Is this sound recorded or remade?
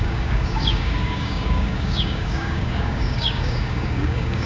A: remade